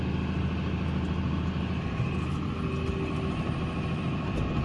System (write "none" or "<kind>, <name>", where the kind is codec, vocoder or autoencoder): none